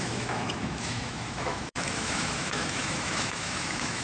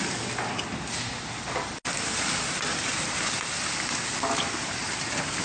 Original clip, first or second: second